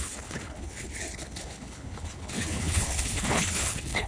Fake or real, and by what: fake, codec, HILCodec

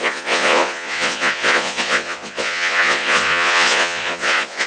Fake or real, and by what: fake, vocoder, Vocos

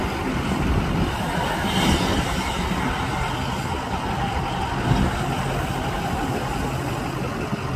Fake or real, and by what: real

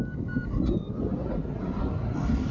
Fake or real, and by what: real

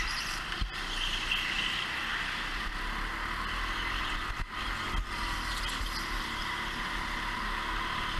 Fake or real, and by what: real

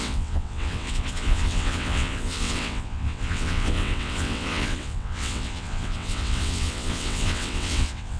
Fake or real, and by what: fake, vocoder, WaveNeXt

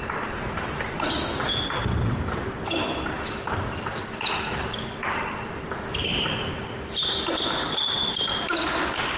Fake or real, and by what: real